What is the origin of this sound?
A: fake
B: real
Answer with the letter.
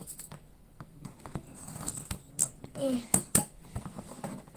A